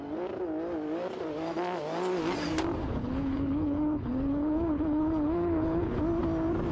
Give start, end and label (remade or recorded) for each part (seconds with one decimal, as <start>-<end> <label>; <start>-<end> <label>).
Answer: 0.0-2.8 recorded; 2.8-6.0 remade; 6.0-6.7 recorded